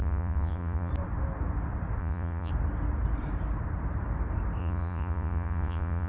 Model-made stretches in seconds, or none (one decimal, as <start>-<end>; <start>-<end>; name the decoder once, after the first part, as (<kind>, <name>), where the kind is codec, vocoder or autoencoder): 0.0-0.9 (vocoder, Vocos); 2.0-2.5; 4.6-6.1